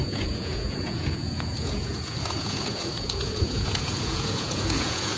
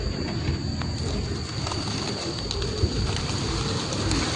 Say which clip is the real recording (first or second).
second